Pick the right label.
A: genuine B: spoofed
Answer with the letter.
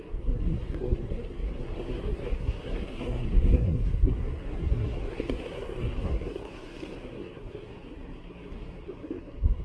B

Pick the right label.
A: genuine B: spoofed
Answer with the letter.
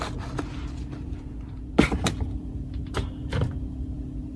A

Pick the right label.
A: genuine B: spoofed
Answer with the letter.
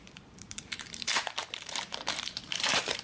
B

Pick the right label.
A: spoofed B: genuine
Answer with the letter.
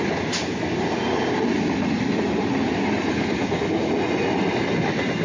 B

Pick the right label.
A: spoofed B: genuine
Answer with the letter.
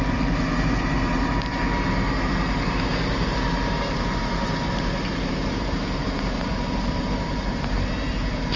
A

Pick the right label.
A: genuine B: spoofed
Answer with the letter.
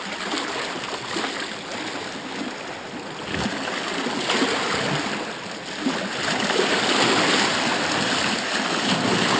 A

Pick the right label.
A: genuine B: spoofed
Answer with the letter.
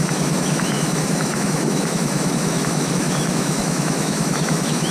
B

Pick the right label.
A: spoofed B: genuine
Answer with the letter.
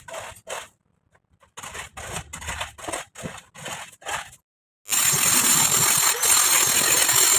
B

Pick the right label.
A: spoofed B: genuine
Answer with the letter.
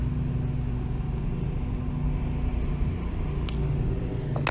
B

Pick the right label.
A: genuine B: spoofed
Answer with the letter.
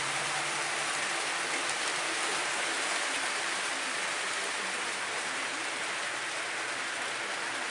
A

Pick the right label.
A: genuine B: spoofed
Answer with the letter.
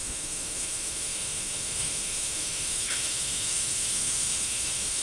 B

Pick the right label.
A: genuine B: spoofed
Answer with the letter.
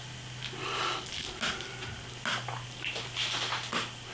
A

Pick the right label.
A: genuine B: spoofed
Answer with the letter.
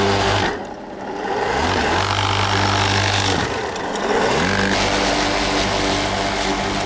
A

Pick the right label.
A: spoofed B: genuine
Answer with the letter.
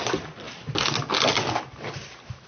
B